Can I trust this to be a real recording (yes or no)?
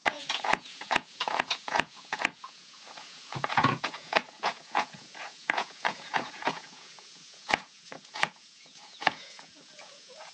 no